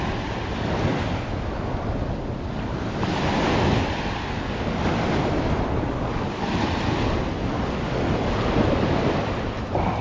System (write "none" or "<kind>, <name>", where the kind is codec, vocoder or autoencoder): none